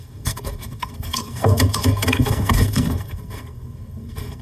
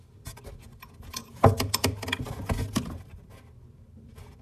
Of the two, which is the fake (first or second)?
first